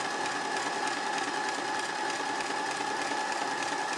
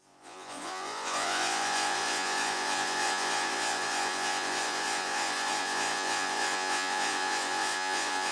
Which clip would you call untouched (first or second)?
first